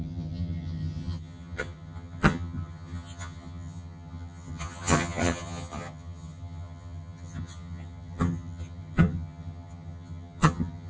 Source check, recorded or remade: remade